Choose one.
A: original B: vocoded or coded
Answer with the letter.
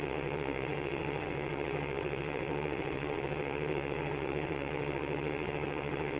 B